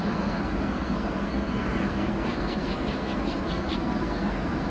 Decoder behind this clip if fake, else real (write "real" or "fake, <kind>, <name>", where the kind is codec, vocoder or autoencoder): fake, codec, SNAC